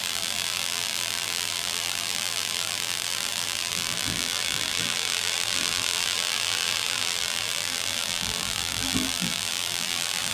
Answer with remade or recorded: remade